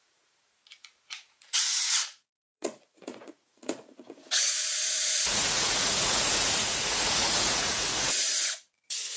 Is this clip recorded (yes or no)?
no